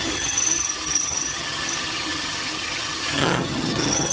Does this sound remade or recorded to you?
remade